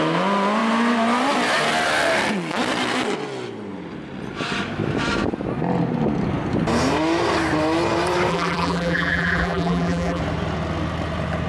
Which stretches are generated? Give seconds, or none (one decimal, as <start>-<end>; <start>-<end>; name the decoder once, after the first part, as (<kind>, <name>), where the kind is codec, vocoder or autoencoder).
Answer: 8.3-10.2 (vocoder, BigVGAN v2)